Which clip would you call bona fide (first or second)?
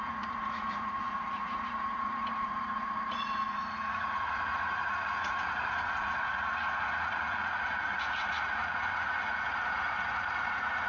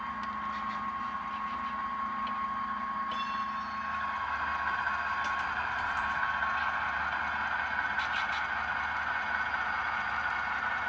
second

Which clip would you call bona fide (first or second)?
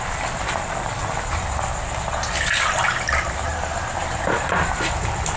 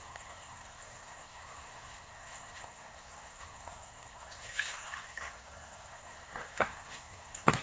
first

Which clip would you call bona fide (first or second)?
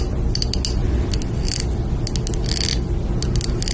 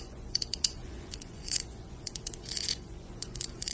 first